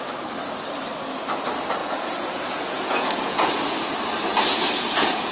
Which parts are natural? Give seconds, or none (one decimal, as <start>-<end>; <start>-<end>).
0.0-1.8; 3.8-4.3